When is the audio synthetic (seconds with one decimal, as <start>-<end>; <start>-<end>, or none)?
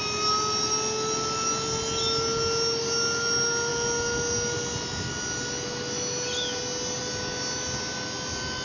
none